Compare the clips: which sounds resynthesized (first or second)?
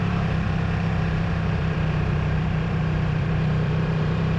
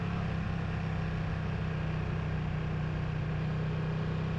first